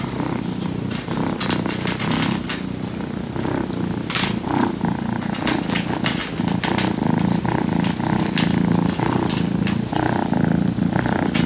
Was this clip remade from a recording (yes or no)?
no